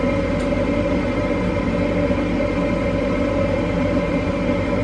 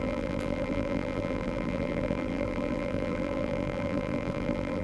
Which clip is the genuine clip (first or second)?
first